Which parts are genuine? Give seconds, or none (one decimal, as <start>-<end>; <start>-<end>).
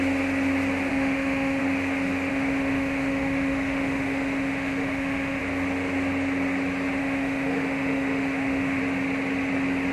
0.0-0.9; 1.6-2.3; 5.4-7.0; 8.8-9.9